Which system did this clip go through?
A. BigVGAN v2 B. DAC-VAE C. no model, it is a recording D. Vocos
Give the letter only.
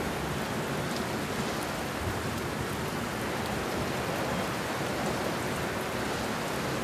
C